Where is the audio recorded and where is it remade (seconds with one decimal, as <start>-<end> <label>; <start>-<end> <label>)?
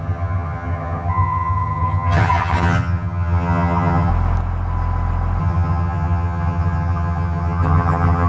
0.0-4.1 remade; 4.1-5.4 recorded; 5.4-8.3 remade